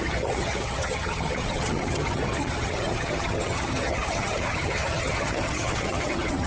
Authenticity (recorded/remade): remade